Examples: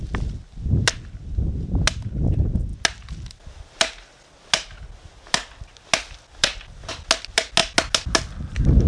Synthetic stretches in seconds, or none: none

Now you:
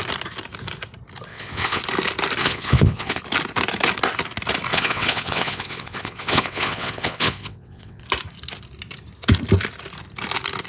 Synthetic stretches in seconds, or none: 1.3-1.8 (vocoder, WaveNeXt); 2.4-3.2; 4.7-8.0